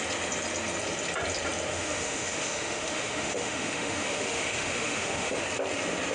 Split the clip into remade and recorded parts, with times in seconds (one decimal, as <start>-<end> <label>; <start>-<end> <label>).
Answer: 0.0-1.7 recorded; 1.7-5.4 remade; 5.4-6.1 recorded